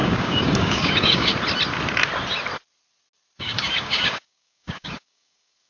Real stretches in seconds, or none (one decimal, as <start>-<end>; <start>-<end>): 1.3-3.4